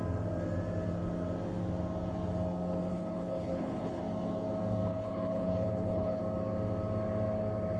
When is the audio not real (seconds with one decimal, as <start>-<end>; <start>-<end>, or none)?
2.9-4.0; 4.9-6.2